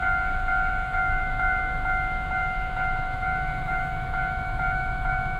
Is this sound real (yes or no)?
no